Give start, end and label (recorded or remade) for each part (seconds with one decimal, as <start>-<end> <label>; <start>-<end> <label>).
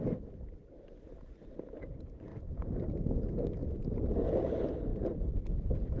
0.0-2.3 recorded; 2.3-3.0 remade; 3.0-3.6 recorded; 3.6-4.2 remade; 4.2-4.9 recorded; 4.9-5.4 remade; 5.4-6.0 recorded